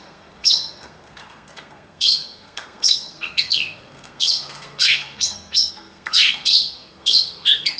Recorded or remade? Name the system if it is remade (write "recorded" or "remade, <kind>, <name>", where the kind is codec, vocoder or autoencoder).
remade, codec, SNAC